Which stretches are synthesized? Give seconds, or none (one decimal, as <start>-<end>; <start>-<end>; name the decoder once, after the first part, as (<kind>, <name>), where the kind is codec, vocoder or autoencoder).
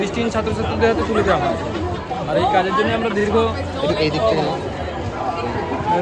none